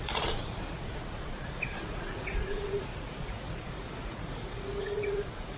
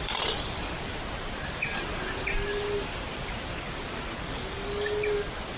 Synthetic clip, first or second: first